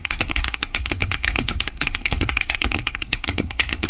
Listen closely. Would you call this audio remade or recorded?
remade